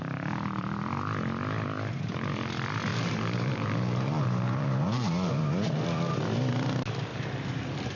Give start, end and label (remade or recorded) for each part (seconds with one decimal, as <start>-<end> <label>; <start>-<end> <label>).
0.0-2.9 recorded; 2.9-5.4 remade; 5.4-7.1 recorded; 7.1-8.0 remade